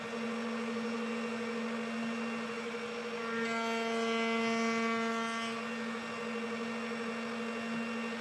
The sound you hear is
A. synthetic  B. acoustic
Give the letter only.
B